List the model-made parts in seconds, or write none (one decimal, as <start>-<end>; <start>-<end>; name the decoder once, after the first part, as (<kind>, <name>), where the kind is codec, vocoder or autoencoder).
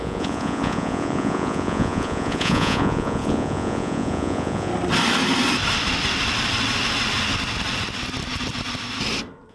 0.0-4.7 (vocoder, Vocos)